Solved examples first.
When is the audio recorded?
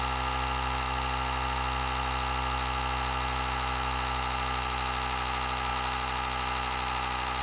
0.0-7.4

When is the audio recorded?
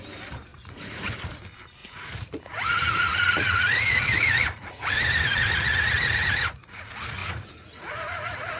0.0-0.5; 1.0-1.8; 6.8-7.2